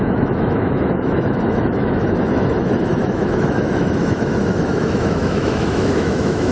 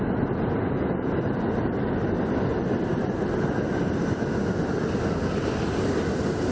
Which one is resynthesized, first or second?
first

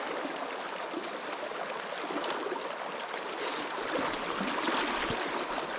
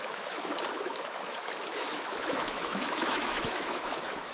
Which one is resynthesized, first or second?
second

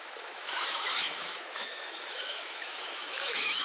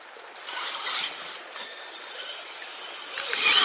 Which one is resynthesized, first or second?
first